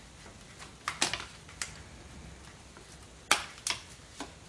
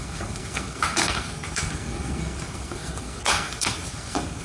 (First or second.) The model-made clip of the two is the second